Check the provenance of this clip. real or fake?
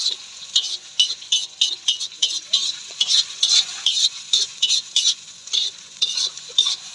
fake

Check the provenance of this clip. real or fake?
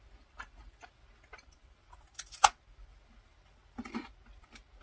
real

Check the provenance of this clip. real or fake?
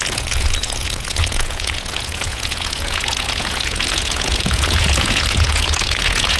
fake